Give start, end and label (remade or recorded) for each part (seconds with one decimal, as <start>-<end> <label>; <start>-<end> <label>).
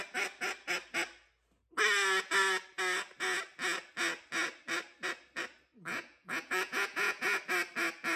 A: 0.0-5.9 recorded; 5.9-7.4 remade; 7.4-8.2 recorded